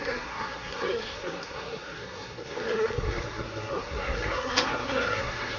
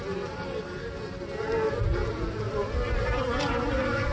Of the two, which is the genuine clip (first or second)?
second